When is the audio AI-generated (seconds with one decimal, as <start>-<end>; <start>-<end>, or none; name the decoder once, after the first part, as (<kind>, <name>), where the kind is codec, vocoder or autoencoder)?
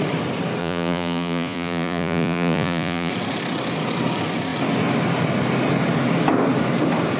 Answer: 0.6-3.1 (vocoder, Vocos)